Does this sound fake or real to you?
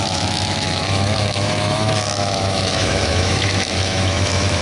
fake